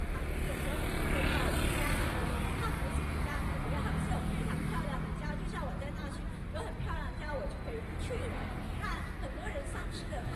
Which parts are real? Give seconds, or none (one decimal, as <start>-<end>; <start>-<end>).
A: 0.0-9.3